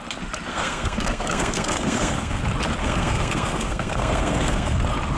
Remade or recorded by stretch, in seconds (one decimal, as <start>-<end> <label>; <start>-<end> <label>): 0.0-0.5 recorded; 0.5-2.4 remade; 2.4-2.8 recorded; 2.8-4.8 remade; 4.8-5.2 recorded